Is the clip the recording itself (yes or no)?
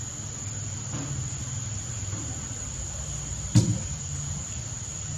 no